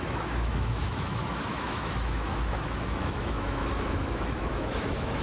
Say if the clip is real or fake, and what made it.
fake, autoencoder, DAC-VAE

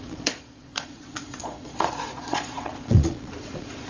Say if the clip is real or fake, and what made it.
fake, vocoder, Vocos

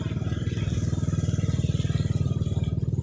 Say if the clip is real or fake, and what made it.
real